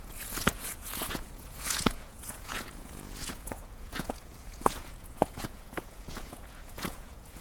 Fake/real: fake